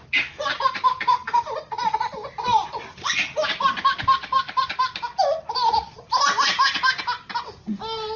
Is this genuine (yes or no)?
yes